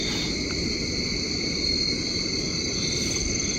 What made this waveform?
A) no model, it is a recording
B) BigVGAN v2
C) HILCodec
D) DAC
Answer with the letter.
B